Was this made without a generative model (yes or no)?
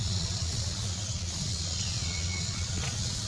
no